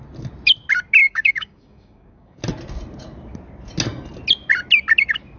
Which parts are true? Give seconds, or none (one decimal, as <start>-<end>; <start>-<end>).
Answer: 0.0-1.0; 2.4-5.4